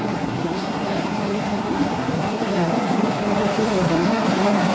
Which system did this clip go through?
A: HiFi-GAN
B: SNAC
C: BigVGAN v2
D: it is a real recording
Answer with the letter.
B